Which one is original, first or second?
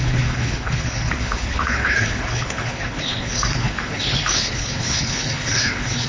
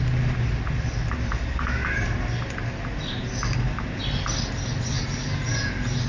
second